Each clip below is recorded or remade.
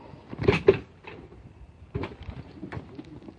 remade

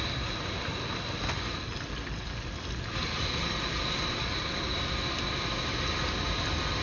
recorded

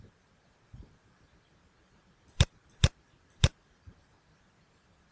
recorded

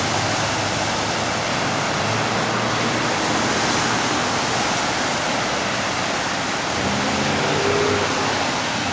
recorded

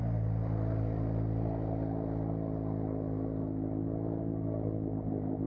recorded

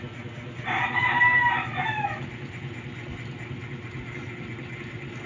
recorded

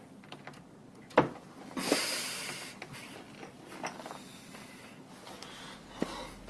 recorded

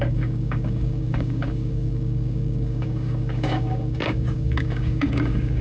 remade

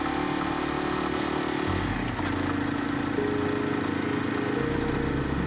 recorded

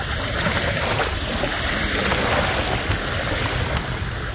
recorded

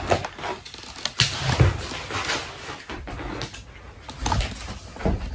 recorded